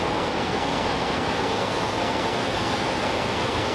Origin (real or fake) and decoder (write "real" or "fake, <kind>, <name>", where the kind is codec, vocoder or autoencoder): fake, codec, SNAC